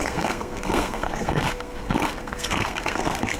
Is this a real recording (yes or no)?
no